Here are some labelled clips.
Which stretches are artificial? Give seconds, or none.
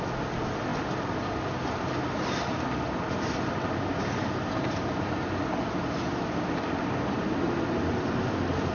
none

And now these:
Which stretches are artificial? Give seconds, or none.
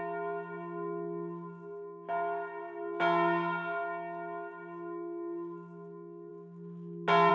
none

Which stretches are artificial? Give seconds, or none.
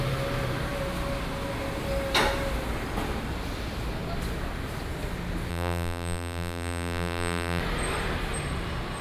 5.5-7.6 (vocoder, BigVGAN v2)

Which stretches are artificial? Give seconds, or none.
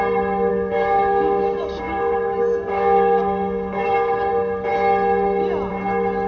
0.5-4.3 (codec, DAC)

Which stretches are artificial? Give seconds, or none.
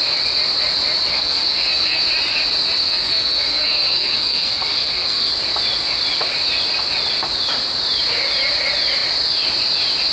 1.1-2.0 (codec, SNAC); 2.8-5.3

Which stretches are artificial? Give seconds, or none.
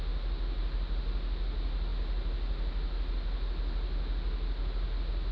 none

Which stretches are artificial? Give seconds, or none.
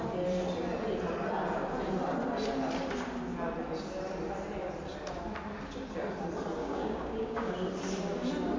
6.6-7.5 (codec, DAC)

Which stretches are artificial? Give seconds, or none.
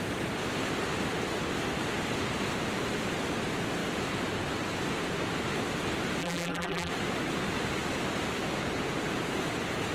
6.2-6.9 (vocoder, BigVGAN v2)